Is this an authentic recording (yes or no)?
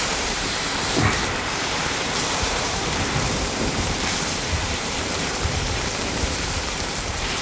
no